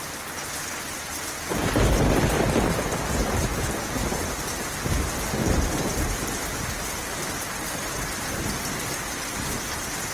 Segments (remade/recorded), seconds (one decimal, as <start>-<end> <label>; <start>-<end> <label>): 0.0-4.1 recorded; 4.1-5.5 remade; 5.5-10.1 recorded